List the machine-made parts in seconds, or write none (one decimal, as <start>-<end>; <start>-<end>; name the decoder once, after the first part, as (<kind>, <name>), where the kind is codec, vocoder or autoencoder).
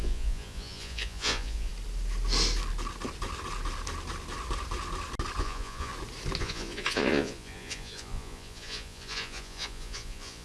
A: 0.0-1.7 (vocoder, Vocos); 5.4-5.9; 6.4-10.4